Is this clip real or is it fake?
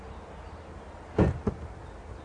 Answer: real